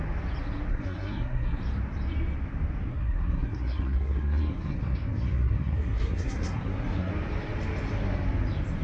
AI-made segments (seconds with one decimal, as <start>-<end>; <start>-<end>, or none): 0.7-1.6; 2.9-7.1